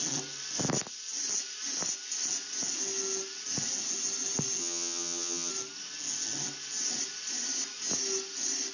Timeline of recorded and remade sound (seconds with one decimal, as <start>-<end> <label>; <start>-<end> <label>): 0.0-4.6 recorded; 4.6-5.5 remade; 5.5-8.7 recorded